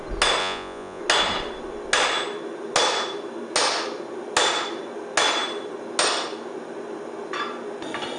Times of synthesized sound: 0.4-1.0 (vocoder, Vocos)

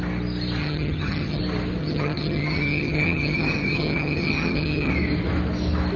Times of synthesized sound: 0.6-1.4 (vocoder, HiFi-GAN); 1.8-4.9

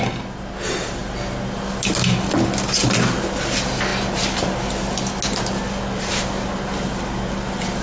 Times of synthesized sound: none

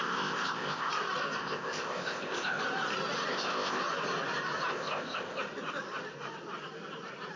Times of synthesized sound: 0.0-0.9 (codec, ZipCodec); 1.4-2.6; 3.3-3.8; 4.7-5.4

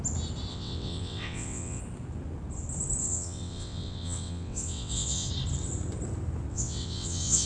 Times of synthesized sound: 0.5-1.8 (vocoder, WaveNeXt); 3.0-5.3; 6.5-7.5

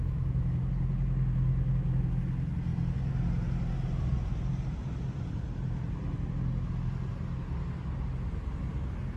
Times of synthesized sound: 0.0-0.6 (autoencoder, DAC-VAE); 1.5-2.2

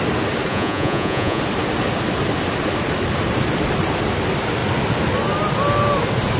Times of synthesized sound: 0.5-1.4 (vocoder, Vocos)